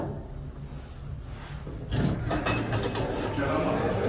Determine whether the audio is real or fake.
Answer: real